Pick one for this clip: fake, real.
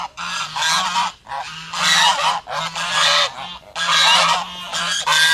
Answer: real